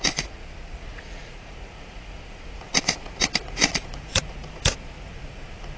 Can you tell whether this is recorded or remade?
remade